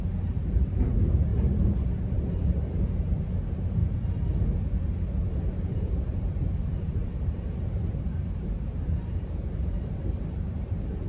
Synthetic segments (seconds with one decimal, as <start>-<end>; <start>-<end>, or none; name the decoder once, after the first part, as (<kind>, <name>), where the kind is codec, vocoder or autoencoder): 0.0-3.8 (vocoder, BigVGAN v2); 5.5-11.1